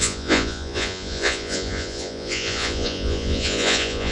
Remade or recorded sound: remade